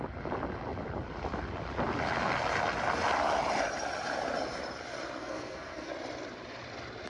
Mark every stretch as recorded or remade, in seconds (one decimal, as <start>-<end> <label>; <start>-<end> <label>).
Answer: 0.0-5.2 recorded; 5.2-5.9 remade; 5.9-7.1 recorded